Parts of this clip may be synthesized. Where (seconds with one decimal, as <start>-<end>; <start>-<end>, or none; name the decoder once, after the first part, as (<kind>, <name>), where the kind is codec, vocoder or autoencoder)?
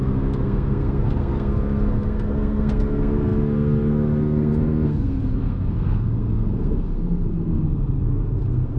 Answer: 0.0-8.8 (codec, SNAC)